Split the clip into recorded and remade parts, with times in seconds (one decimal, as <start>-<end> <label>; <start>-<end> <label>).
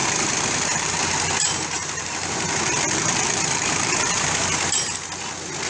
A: 0.0-1.0 remade; 1.0-1.8 recorded; 1.8-3.9 remade; 3.9-5.7 recorded